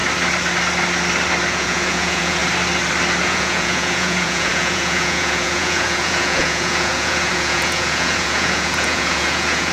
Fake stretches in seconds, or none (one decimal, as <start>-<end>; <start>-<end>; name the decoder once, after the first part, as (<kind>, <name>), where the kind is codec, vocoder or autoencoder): 1.5-2.4 (vocoder, Vocos); 3.2-9.7